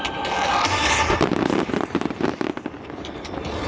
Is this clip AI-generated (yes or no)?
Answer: no